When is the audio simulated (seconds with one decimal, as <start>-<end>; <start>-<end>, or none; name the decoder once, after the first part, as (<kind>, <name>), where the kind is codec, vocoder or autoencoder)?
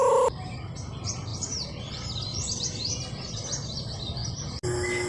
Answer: none